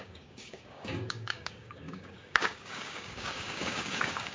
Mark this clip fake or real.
fake